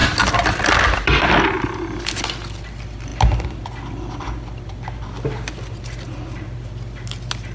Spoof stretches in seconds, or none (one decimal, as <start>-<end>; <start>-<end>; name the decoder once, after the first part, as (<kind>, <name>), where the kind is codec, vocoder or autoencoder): none

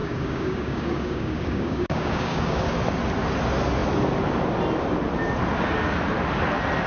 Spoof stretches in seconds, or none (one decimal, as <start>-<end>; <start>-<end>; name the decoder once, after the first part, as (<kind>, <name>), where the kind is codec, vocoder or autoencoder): 0.0-2.7 (codec, DAC)